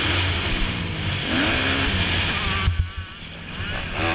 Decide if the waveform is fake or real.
real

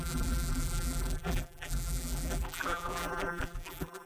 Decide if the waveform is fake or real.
fake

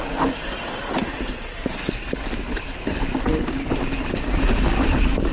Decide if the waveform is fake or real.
real